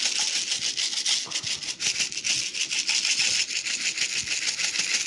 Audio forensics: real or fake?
real